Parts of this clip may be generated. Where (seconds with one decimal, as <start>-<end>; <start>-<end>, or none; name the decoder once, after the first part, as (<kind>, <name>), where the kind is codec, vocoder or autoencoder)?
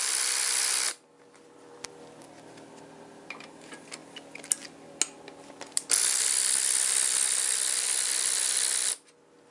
none